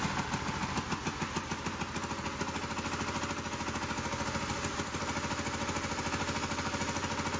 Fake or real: real